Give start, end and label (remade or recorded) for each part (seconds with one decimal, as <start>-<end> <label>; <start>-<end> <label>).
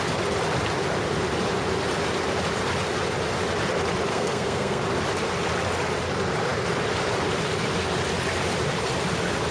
0.0-4.1 recorded; 4.1-4.8 remade; 4.8-9.5 recorded